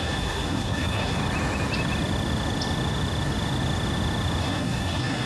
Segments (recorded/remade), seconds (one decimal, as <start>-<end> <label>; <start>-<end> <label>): 0.0-1.2 remade; 1.2-4.4 recorded; 4.4-5.3 remade